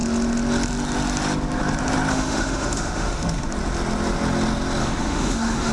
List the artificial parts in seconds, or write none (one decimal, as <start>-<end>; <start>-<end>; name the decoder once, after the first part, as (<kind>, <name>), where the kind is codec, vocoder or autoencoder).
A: 2.1-3.5 (autoencoder, DAC-VAE); 4.8-5.7